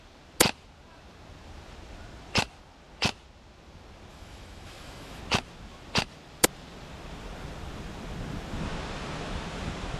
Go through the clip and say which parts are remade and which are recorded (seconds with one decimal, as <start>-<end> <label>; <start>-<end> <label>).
0.0-4.1 recorded; 4.1-5.2 remade; 5.2-10.0 recorded